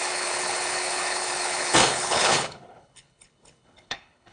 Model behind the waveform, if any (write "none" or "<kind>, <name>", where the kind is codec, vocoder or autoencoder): codec, HILCodec